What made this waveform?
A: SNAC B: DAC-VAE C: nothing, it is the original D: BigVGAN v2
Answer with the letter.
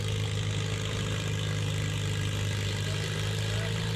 C